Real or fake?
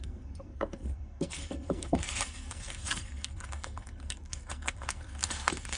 fake